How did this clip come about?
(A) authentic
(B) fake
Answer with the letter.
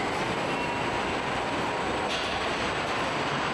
A